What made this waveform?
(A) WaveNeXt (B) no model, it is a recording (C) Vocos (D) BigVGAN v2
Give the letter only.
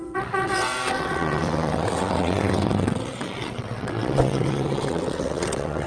A